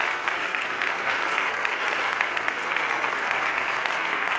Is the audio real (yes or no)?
no